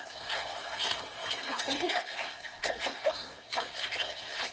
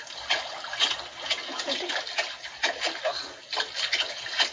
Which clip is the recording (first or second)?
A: second